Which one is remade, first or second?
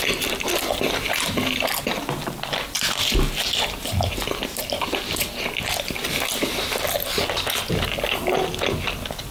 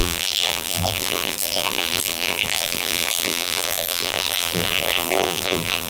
second